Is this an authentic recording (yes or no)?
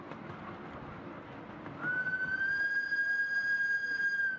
yes